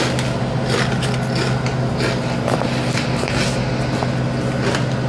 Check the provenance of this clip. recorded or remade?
recorded